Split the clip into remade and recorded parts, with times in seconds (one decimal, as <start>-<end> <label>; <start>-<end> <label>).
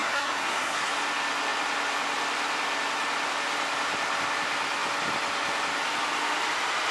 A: 0.0-0.9 remade; 0.9-6.9 recorded